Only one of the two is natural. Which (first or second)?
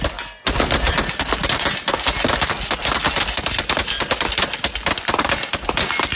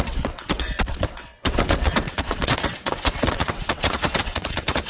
first